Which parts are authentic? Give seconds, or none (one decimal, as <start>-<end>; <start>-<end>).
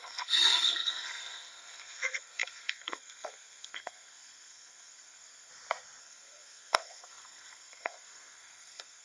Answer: 5.5-6.0